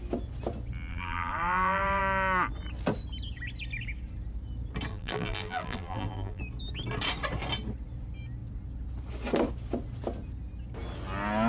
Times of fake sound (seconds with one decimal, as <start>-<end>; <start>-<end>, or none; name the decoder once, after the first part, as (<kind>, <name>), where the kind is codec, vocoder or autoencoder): 0.9-2.0 (vocoder, BigVGAN v2); 4.9-6.4